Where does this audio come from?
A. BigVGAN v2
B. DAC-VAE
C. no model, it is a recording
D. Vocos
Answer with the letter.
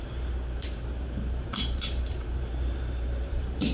A